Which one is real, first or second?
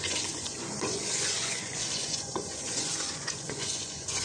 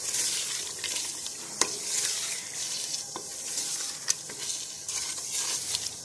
second